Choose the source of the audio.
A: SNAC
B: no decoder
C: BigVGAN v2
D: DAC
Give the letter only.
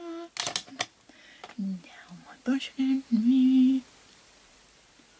B